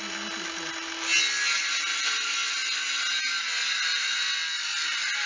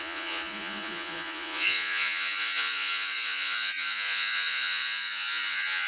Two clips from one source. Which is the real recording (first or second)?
first